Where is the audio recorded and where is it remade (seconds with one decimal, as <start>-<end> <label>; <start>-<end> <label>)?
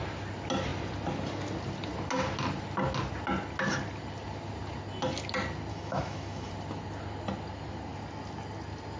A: 0.0-5.7 recorded; 5.7-6.5 remade; 6.5-9.0 recorded